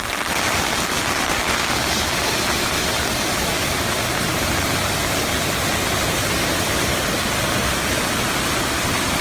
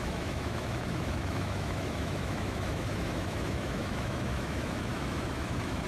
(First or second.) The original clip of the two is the first